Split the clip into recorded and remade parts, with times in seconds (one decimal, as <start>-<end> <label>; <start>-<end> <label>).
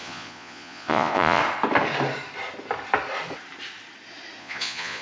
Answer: 0.0-1.4 remade; 1.4-4.4 recorded; 4.4-5.0 remade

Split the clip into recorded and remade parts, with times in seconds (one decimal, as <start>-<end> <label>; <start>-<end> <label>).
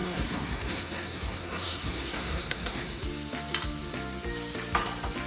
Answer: 0.0-3.0 remade; 3.0-5.3 recorded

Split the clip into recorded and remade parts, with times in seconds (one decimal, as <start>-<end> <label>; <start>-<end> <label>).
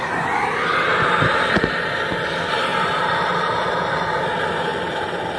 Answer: 0.0-5.4 recorded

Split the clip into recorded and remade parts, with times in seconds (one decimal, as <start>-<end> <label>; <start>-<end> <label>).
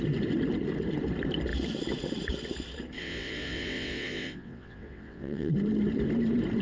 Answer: 0.0-3.0 recorded; 3.0-5.5 remade; 5.5-6.6 recorded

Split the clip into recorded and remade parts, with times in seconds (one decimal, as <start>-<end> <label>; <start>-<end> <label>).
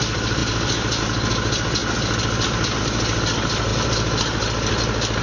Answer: 0.0-5.2 recorded